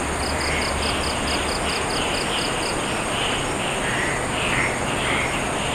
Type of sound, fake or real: real